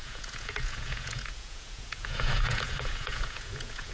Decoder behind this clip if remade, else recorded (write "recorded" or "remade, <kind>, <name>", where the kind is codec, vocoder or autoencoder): remade, vocoder, Vocos